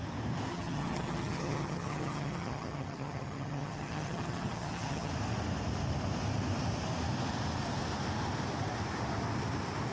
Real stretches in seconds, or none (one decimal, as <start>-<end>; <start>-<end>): 0.0-0.5; 5.1-9.9